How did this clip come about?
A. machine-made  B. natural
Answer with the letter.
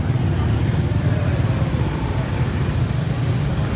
B